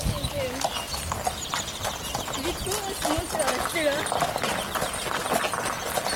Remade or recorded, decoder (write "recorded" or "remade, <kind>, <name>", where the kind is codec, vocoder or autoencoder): recorded